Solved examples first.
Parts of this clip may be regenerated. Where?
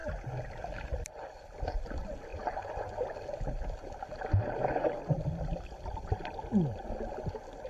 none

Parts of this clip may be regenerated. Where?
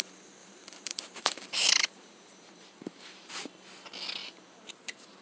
0.4-3.5; 4.2-5.2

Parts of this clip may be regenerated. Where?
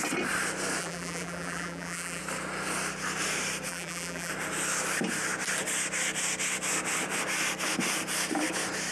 0.8-2.2; 3.7-4.3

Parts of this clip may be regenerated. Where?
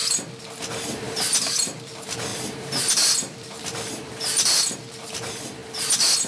0.8-5.6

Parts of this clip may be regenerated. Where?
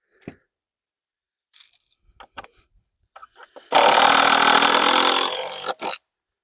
none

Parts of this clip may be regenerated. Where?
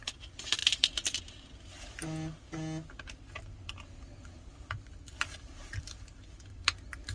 0.6-1.7; 4.5-6.4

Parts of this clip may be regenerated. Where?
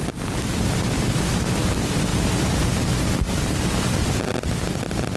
none